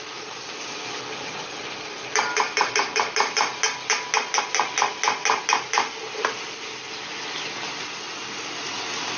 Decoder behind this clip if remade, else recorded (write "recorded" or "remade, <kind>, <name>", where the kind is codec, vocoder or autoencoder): recorded